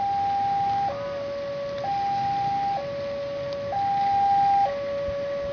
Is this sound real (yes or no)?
yes